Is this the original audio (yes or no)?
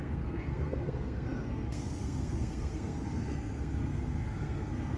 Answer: no